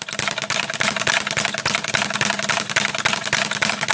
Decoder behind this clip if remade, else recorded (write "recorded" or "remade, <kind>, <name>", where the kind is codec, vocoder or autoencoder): recorded